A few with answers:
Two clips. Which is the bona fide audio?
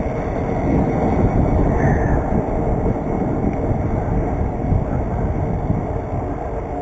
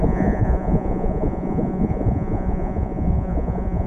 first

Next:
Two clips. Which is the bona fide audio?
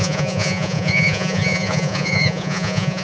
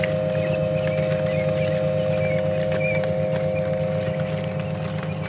second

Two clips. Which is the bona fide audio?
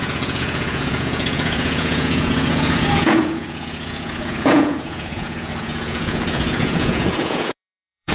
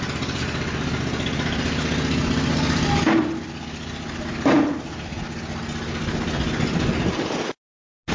second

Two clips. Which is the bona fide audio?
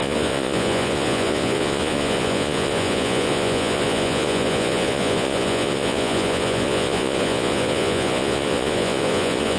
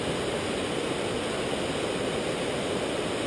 second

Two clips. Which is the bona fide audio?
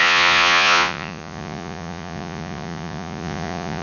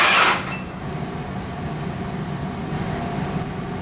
second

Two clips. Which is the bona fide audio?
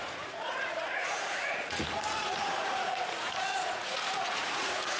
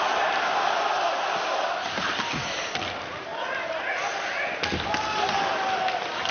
second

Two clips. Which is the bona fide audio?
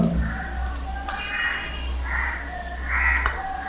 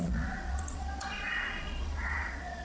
first